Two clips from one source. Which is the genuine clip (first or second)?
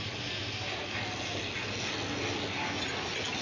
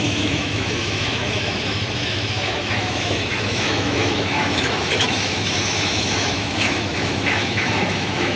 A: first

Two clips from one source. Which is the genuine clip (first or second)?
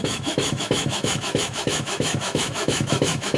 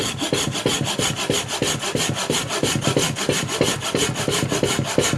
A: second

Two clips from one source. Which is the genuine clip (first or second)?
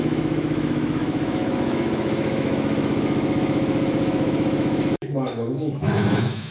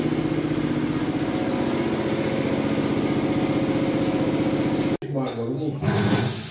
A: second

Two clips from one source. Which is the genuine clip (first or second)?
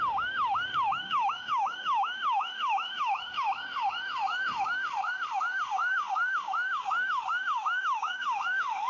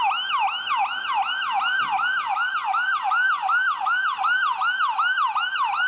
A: second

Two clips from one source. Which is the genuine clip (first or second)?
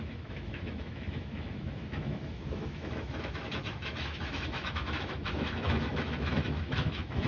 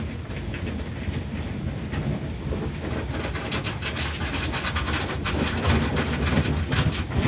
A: second